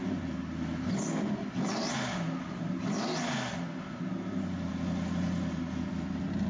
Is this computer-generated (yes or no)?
no